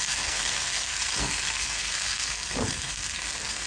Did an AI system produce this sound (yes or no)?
yes